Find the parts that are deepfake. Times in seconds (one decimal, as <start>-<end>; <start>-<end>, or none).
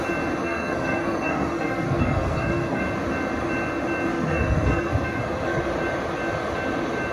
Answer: 0.4-2.8; 4.1-5.6